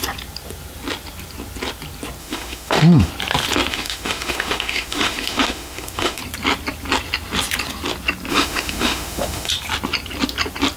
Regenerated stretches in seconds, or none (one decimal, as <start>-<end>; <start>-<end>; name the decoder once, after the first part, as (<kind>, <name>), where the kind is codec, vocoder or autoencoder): 2.2-3.1 (autoencoder, DAC-VAE); 3.7-6.2; 8.3-9.5